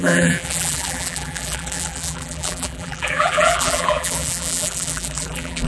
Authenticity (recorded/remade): remade